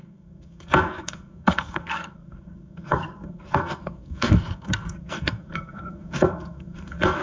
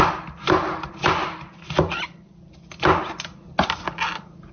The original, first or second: second